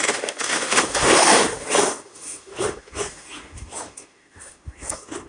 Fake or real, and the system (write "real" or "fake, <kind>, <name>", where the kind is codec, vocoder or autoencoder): fake, autoencoder, DAC-VAE